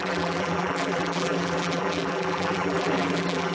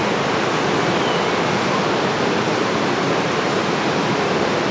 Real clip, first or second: second